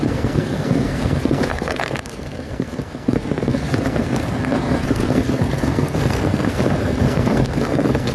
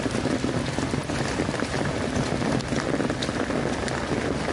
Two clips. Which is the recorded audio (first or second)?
second